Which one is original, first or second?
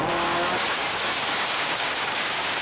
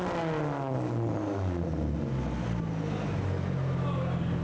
second